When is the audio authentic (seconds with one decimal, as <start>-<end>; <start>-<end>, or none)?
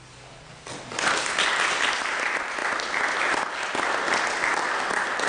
0.0-5.3